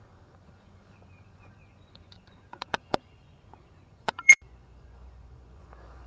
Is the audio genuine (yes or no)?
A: no